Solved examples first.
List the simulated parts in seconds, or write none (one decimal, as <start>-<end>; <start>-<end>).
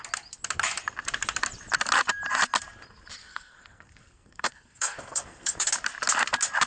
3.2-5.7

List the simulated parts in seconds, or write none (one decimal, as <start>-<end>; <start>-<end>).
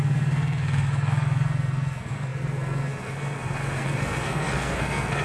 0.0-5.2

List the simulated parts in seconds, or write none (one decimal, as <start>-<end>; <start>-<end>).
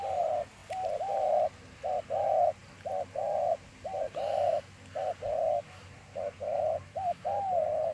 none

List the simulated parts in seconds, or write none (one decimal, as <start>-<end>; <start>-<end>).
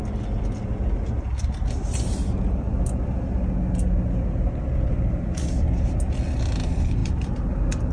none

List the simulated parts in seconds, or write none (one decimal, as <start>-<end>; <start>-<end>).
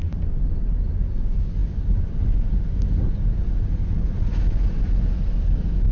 none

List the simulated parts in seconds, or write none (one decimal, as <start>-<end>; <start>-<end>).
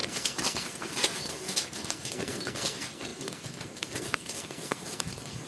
0.0-5.5